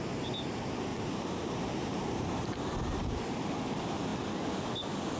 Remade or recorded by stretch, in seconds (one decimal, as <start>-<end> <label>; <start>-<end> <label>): 0.0-0.9 recorded; 0.9-3.2 remade; 3.2-5.2 recorded